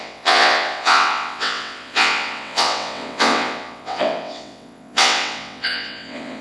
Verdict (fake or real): fake